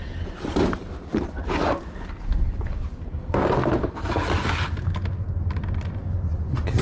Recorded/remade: recorded